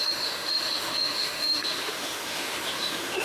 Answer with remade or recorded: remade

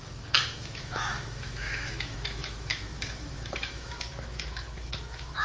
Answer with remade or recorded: remade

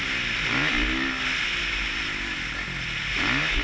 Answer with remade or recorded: recorded